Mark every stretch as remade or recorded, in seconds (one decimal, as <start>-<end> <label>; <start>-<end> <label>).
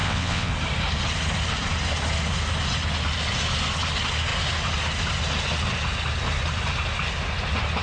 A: 0.0-0.5 remade; 0.5-7.8 recorded